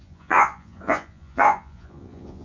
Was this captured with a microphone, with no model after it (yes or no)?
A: no